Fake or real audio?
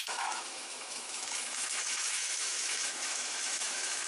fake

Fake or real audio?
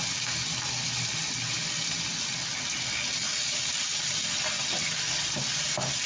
real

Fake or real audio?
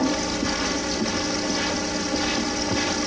real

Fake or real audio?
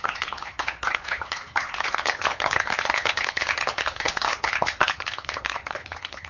fake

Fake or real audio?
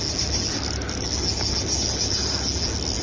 real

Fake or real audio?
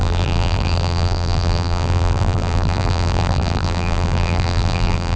fake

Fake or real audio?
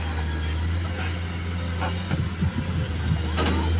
real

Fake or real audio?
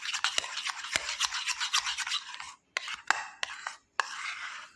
real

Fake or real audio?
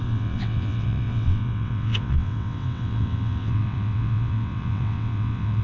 fake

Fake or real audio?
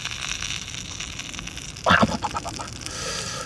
real